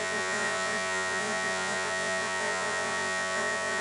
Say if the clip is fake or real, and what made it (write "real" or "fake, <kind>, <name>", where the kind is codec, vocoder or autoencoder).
fake, vocoder, Vocos